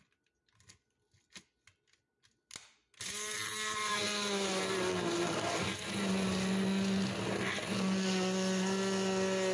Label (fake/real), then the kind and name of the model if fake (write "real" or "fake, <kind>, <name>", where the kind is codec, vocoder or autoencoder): real